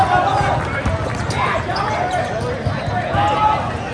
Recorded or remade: recorded